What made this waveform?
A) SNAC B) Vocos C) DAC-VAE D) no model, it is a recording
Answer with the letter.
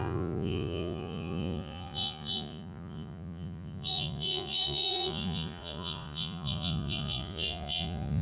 B